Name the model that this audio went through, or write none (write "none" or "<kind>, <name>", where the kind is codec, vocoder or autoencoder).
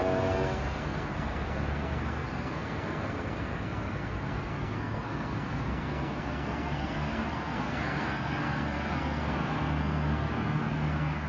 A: codec, SNAC